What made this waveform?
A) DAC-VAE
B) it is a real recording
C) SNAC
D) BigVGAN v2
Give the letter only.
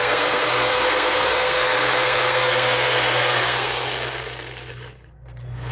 C